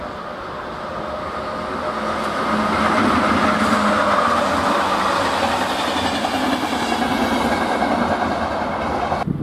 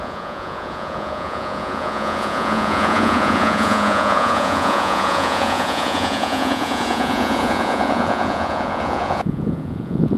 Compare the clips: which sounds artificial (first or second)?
second